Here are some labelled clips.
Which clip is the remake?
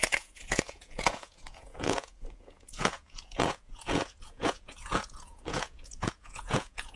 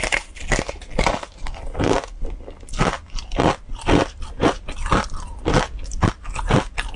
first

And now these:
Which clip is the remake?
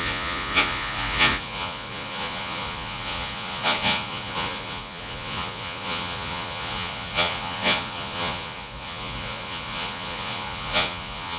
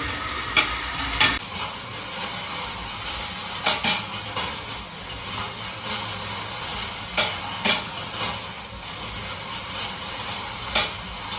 first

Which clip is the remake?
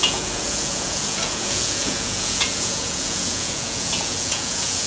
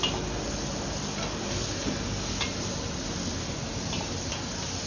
first